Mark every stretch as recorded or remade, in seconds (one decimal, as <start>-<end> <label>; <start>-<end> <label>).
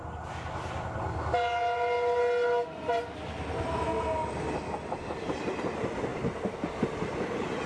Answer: 0.0-7.7 recorded